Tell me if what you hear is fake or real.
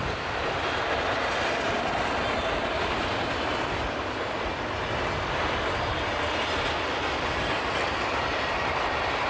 real